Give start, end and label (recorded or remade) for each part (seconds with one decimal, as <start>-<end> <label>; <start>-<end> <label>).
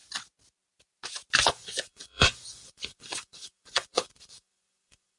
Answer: 0.0-1.5 recorded; 1.5-5.2 remade